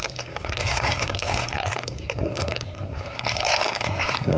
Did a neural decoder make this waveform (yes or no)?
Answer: yes